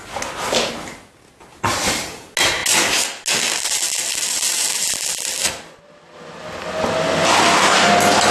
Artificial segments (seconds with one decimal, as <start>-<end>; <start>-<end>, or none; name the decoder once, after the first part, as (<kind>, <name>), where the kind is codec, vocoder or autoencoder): none